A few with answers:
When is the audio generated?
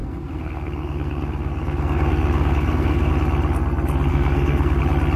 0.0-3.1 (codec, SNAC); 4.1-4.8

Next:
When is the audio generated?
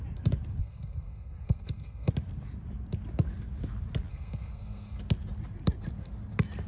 0.6-2.1 (codec, SNAC); 4.1-5.0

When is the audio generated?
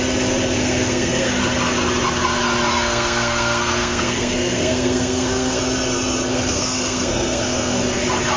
0.6-1.3 (codec, SNAC); 2.7-5.6; 6.3-8.0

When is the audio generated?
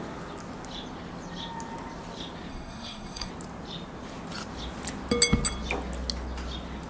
2.5-3.3 (codec, SNAC)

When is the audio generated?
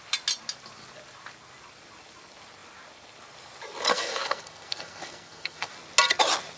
3.9-5.7 (codec, SNAC)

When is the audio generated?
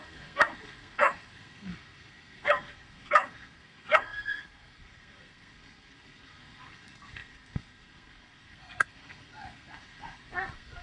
0.0-10.8 (codec, SNAC)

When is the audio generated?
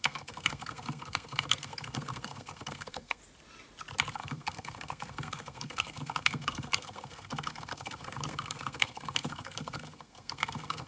0.0-3.2 (codec, SNAC); 4.1-10.9